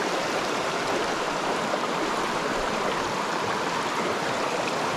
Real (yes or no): no